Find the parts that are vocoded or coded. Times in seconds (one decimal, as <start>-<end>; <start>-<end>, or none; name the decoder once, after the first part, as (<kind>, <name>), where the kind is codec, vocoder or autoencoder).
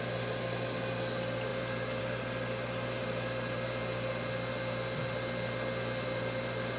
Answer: none